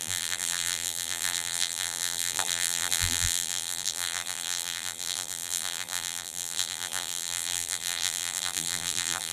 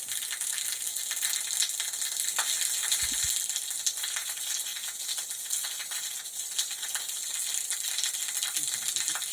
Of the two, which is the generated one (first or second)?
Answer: first